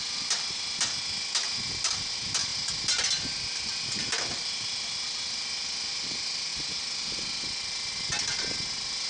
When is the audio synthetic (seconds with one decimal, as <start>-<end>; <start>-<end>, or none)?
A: none